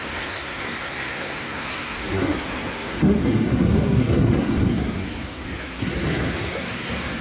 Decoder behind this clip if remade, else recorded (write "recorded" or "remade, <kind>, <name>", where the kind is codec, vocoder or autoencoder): remade, codec, SNAC